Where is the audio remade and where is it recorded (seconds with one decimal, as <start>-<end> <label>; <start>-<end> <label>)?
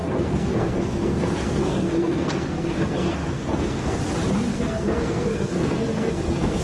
0.0-4.0 remade; 4.0-4.5 recorded; 4.5-6.6 remade